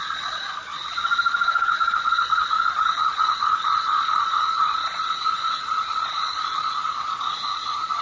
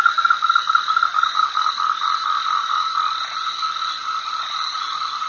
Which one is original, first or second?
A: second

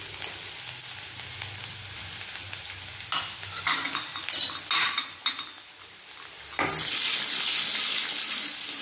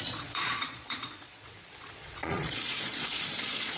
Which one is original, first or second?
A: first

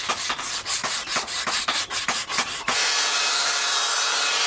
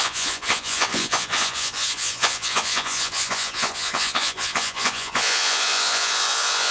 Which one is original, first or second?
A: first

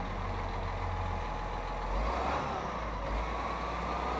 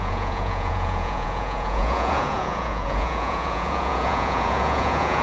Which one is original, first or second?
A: first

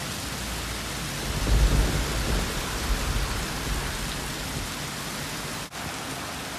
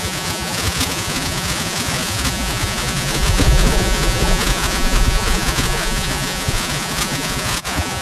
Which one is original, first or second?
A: first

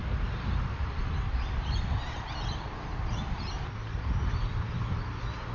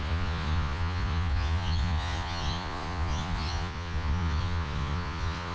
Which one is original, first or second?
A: first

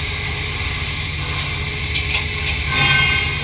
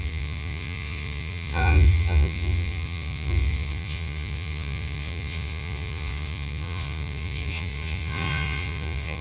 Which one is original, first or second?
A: first